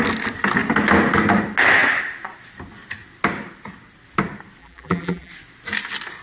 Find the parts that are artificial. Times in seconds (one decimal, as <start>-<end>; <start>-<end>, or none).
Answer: 4.6-5.3